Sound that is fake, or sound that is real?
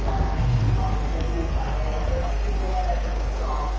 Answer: fake